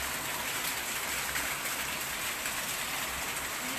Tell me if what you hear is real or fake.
real